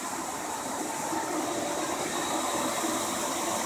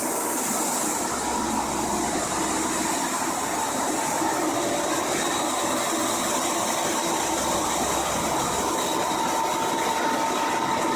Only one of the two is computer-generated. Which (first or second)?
first